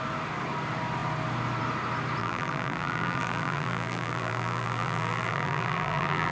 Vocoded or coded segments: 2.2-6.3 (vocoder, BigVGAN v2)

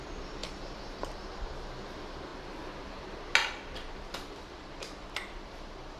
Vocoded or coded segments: 0.4-1.3 (vocoder, BigVGAN v2); 3.4-6.0